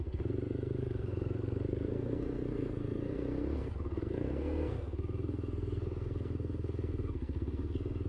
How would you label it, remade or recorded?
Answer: remade